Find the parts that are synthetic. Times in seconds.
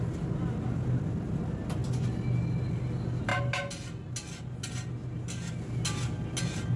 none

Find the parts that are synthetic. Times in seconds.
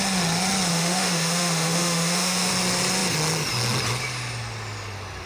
0.7-2.5 (autoencoder, DAC-VAE)